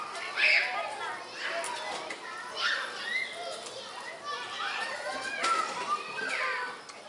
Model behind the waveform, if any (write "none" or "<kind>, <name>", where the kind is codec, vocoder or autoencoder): none